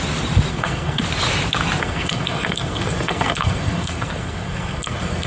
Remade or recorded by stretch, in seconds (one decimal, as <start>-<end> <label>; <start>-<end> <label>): 0.0-0.5 recorded; 0.5-1.0 remade; 1.0-1.8 recorded; 1.8-5.3 remade